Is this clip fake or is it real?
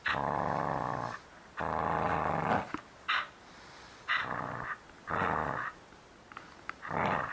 real